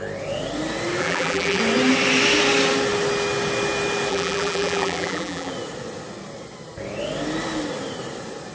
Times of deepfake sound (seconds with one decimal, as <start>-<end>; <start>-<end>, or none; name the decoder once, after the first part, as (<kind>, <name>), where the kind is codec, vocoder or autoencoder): 1.0-1.6 (vocoder, BigVGAN v2); 4.1-5.5